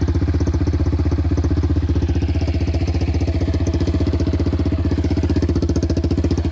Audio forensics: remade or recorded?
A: recorded